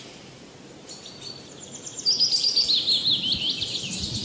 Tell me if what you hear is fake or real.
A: real